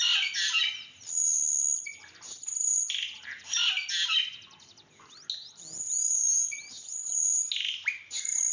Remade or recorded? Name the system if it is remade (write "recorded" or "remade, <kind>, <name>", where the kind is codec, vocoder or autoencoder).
recorded